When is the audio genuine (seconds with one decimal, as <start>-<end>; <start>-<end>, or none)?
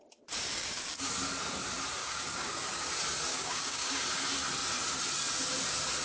0.0-0.6; 1.1-2.0; 2.9-3.3; 4.0-6.0